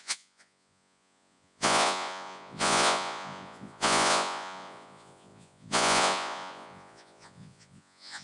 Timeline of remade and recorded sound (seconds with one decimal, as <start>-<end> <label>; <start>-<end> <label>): 0.0-8.2 remade